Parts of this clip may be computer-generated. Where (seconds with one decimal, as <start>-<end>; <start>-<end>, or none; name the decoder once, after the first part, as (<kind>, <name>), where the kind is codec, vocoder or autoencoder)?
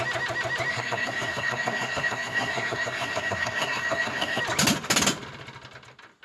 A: 0.7-4.4 (codec, SNAC)